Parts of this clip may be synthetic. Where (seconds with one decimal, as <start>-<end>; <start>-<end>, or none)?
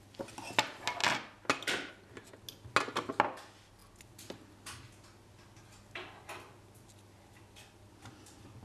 none